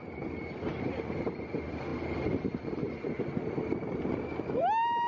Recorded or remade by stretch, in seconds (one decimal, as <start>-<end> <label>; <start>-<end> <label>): 0.0-5.1 recorded